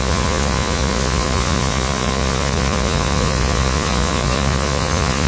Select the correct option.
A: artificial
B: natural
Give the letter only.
A